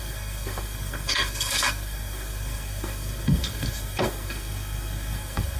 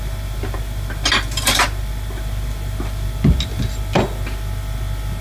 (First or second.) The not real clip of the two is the first